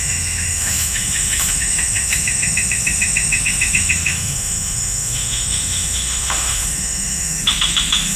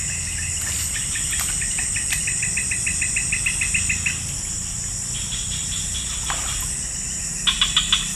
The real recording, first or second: second